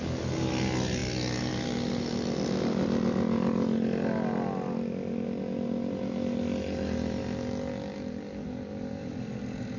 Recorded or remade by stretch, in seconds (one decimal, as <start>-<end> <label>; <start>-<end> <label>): 0.0-9.8 recorded